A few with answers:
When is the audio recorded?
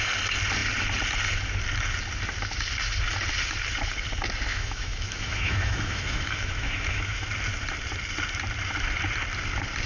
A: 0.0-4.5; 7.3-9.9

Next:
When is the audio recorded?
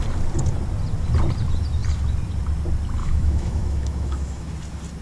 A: 0.0-3.0; 4.5-5.0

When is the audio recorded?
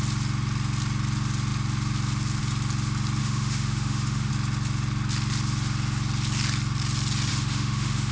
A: 0.0-3.2; 4.3-7.3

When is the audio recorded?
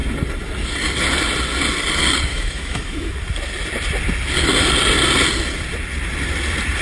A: 0.0-2.3; 3.1-6.8